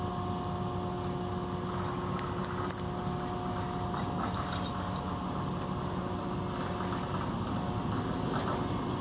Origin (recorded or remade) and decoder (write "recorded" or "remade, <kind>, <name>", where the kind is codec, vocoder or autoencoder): recorded